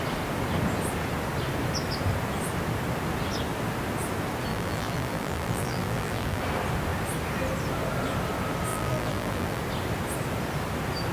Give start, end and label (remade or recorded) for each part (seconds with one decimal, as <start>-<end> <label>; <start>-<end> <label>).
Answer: 0.0-4.5 recorded; 4.5-6.4 remade; 6.4-8.7 recorded; 8.7-9.6 remade; 9.6-11.1 recorded